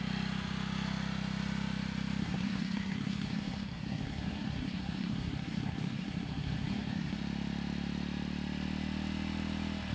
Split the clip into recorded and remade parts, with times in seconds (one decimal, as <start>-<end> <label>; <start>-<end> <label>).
0.0-2.2 recorded; 2.2-7.2 remade; 7.2-9.9 recorded